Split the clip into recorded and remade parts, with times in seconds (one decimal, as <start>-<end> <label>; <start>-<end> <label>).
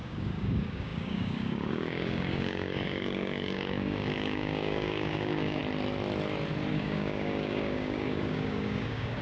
0.0-5.6 remade; 5.6-6.7 recorded; 6.7-9.2 remade